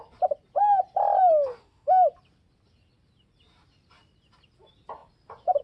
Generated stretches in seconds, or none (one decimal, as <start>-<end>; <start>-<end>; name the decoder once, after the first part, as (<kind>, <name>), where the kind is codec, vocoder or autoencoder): 1.6-2.1 (autoencoder, DAC-VAE)